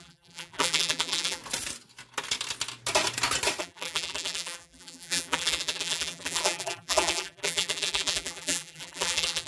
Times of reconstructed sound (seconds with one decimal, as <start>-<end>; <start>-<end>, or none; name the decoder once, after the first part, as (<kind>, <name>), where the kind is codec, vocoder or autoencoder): 0.0-1.4 (vocoder, BigVGAN v2); 3.6-9.5